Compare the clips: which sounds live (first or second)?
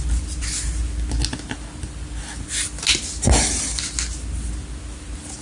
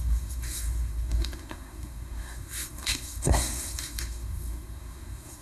first